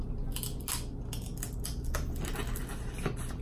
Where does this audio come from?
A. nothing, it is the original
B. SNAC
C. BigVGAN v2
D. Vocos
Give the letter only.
A